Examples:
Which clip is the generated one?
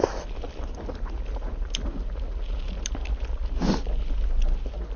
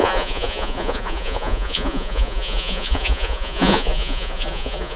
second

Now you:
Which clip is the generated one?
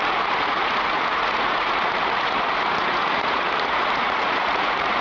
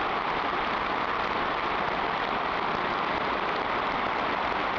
first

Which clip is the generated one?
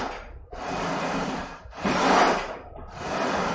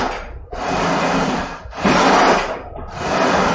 first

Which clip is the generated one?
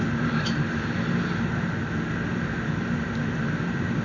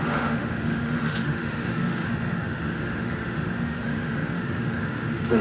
second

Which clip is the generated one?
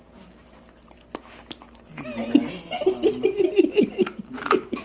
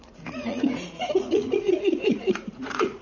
second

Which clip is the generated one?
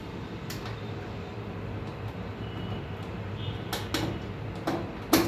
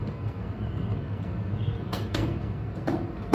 second